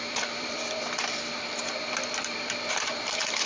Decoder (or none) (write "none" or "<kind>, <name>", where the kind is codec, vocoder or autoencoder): vocoder, BigVGAN v2